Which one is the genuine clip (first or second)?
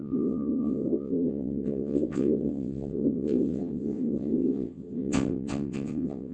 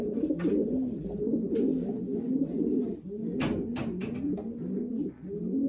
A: second